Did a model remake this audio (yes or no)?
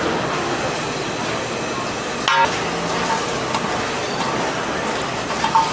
no